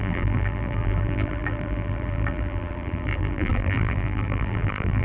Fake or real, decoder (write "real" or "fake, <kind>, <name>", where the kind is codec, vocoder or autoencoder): fake, vocoder, BigVGAN v2